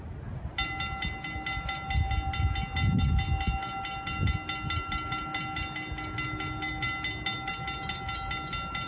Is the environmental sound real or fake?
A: real